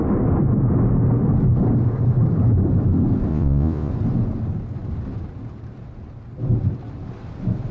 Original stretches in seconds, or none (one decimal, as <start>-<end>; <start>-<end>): 0.0-3.3; 3.9-7.7